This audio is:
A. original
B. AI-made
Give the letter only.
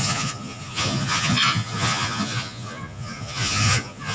B